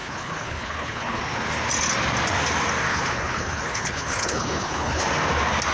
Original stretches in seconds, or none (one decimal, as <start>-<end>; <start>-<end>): 1.2-2.9; 5.0-5.7